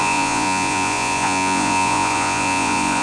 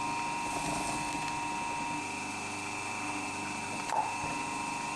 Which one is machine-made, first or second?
first